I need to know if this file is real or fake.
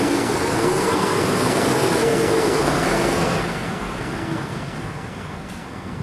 fake